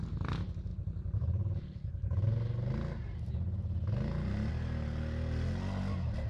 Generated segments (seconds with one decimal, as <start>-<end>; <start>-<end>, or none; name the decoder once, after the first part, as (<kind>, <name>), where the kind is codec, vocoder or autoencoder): none